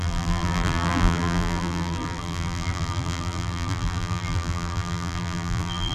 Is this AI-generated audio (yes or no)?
yes